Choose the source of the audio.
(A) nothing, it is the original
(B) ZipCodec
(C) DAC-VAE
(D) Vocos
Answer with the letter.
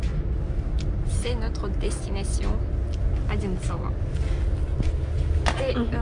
A